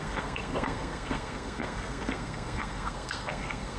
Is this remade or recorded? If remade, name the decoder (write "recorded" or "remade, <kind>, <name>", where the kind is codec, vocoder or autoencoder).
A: remade, codec, SNAC